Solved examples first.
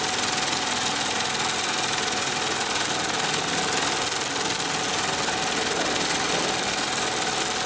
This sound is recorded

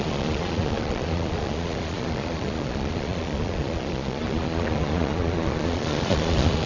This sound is remade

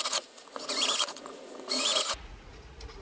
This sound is remade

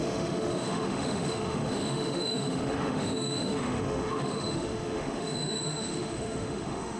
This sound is remade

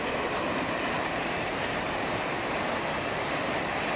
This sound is recorded